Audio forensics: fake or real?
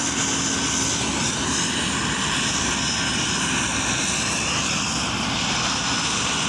real